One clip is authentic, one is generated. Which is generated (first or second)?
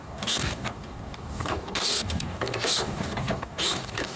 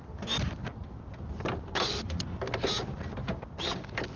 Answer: first